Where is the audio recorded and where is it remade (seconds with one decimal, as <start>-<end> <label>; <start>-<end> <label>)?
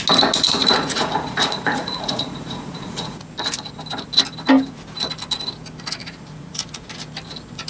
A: 0.0-0.6 recorded; 0.6-3.2 remade; 3.2-6.0 recorded; 6.0-6.9 remade; 6.9-7.7 recorded